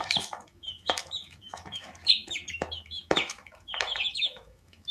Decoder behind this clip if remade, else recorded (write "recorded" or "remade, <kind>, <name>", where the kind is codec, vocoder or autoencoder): remade, autoencoder, DAC-VAE